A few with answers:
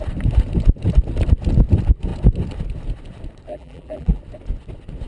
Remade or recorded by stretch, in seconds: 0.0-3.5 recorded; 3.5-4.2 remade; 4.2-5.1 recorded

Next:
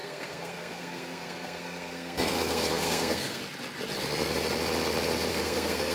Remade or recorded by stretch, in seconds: 0.0-3.4 remade; 3.4-5.3 recorded; 5.3-5.9 remade

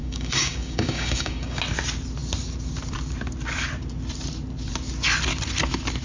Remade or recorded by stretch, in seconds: 0.0-1.6 remade; 1.6-6.0 recorded

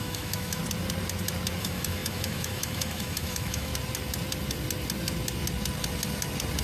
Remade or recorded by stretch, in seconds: 0.0-0.6 remade; 0.6-1.6 recorded; 1.6-3.7 remade; 3.7-6.6 recorded

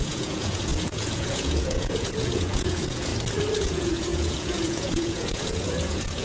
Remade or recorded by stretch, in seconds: 0.0-3.1 remade; 3.1-3.6 recorded; 3.6-6.2 remade

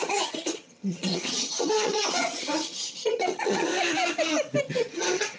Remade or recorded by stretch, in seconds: 0.0-3.7 remade; 3.7-4.6 recorded; 4.6-5.4 remade

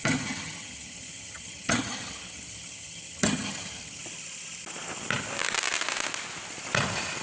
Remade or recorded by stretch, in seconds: 0.0-4.0 remade; 4.0-7.2 recorded

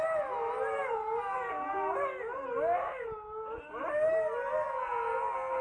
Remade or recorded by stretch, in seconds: 0.0-5.6 recorded